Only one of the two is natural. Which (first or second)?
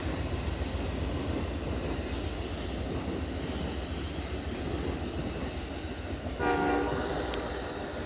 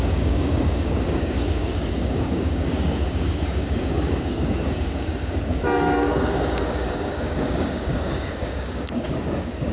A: first